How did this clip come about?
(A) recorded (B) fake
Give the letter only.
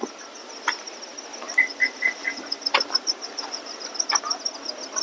A